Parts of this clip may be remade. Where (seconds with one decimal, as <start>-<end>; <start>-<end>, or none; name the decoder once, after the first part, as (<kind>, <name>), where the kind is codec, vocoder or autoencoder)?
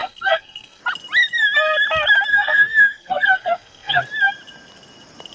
0.0-0.8 (codec, SNAC); 2.3-4.0